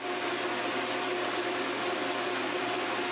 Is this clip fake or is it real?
real